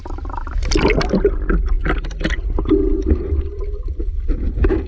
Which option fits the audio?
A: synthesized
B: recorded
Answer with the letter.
B